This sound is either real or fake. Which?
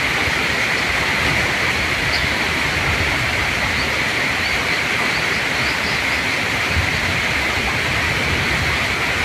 real